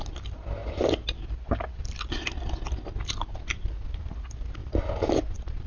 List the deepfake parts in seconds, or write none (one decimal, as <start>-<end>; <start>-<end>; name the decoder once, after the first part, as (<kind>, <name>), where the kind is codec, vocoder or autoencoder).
4.6-5.1 (vocoder, BigVGAN v2)